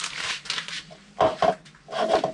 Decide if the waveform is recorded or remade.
recorded